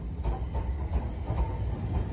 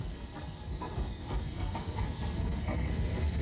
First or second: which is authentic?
first